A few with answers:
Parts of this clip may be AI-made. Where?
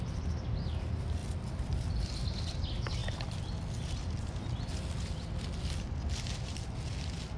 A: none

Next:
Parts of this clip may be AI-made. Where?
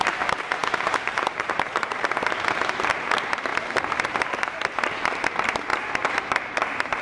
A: 0.0-5.7; 6.3-7.0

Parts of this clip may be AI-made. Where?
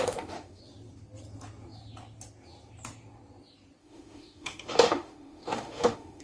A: 0.0-0.6; 3.8-6.2